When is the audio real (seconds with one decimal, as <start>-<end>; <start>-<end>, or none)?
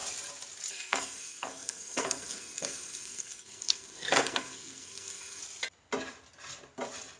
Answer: 0.0-0.7; 5.4-7.2